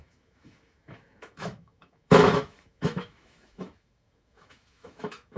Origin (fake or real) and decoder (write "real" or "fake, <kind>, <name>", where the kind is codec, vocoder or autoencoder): fake, autoencoder, DAC-VAE